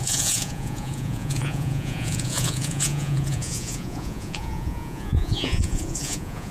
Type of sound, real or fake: fake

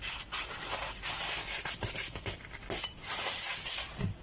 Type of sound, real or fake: real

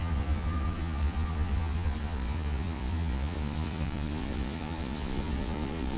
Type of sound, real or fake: fake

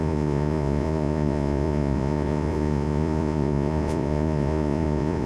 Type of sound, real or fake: fake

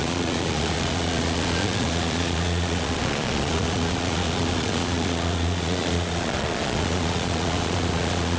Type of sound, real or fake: fake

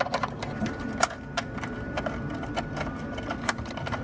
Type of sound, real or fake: real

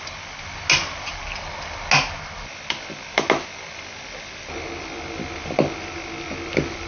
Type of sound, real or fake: real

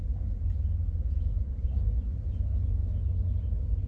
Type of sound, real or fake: real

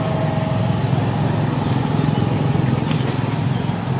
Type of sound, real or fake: real